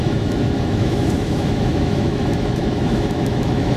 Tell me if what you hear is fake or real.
fake